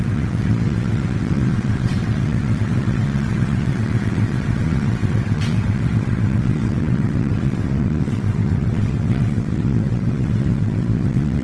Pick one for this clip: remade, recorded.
remade